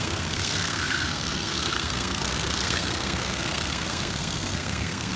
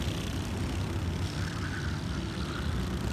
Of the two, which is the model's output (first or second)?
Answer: first